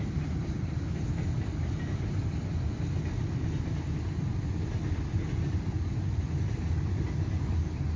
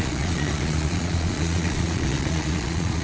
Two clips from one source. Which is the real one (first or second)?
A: first